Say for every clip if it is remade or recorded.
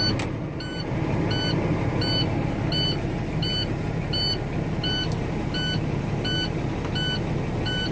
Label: recorded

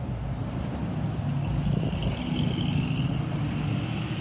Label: recorded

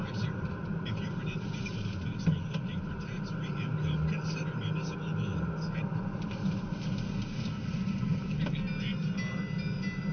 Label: recorded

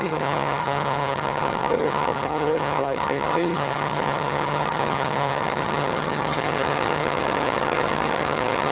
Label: remade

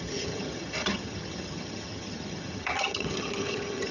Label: remade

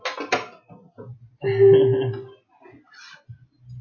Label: recorded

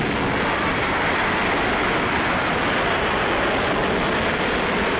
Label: recorded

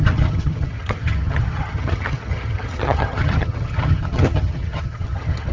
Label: remade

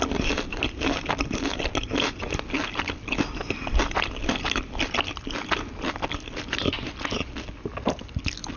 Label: recorded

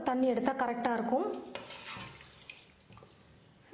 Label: recorded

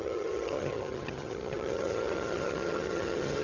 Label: remade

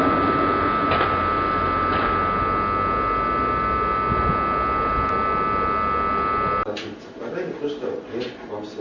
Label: recorded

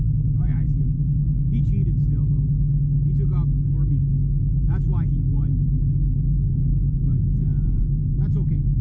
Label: recorded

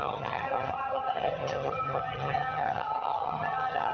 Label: remade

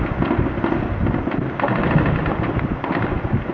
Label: recorded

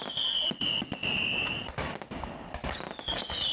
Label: recorded